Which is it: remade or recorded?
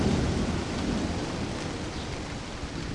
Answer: recorded